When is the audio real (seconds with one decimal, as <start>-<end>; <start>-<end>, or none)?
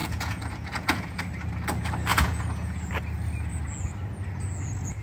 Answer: 1.2-2.1; 2.9-5.0